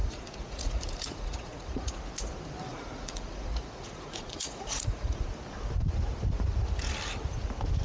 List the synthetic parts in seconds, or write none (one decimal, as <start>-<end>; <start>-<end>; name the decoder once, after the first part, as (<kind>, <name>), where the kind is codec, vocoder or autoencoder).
0.0-2.0 (vocoder, Vocos); 2.7-5.2